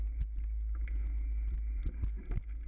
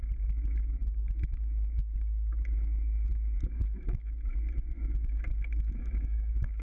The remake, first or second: second